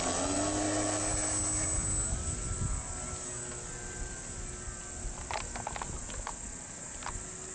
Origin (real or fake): real